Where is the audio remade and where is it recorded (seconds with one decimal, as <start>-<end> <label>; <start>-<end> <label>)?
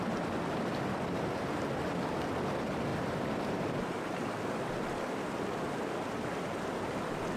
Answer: 0.0-2.9 recorded; 2.9-4.3 remade; 4.3-7.4 recorded